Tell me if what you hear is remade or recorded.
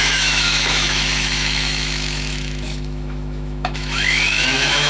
remade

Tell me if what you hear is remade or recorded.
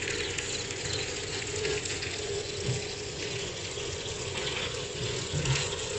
remade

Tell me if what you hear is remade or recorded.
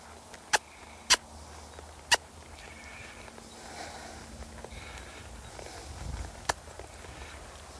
recorded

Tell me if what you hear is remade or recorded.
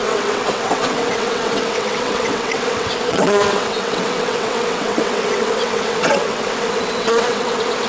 remade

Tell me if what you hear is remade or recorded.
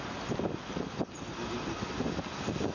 recorded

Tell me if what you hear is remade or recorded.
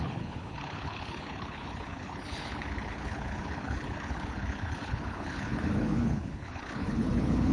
remade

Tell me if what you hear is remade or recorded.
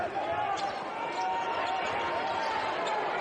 recorded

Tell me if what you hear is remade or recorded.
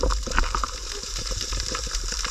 remade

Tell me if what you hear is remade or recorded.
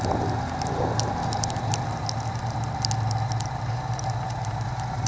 recorded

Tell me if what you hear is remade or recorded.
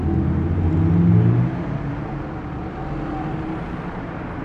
recorded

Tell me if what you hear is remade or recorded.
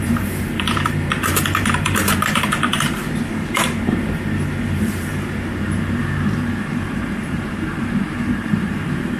remade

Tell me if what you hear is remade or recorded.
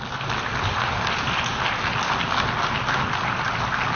recorded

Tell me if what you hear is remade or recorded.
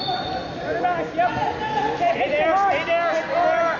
recorded